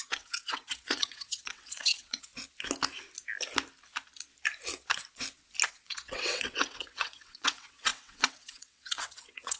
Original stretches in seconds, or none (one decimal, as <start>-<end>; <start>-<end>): 2.3-5.7